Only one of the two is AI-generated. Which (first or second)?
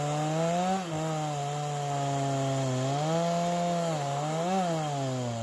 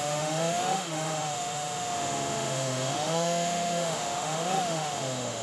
second